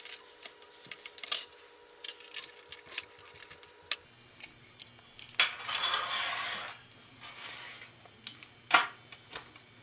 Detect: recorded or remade recorded